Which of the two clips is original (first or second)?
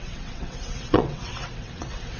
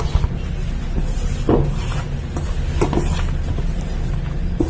second